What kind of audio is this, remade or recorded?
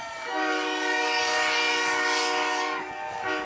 remade